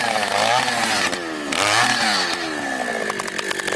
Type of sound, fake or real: real